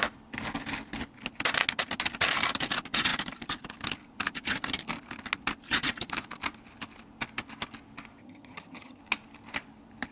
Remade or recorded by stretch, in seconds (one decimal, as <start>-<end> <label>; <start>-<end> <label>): 0.0-8.2 recorded; 8.2-9.0 remade; 9.0-10.1 recorded